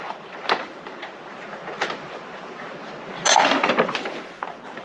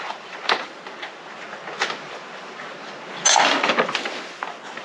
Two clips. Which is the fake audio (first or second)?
first